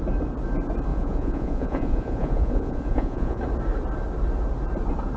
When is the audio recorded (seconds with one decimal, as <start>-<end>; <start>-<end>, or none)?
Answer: 0.0-0.9; 3.4-5.2